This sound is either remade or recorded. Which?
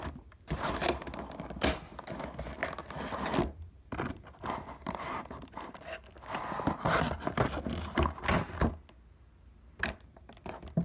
recorded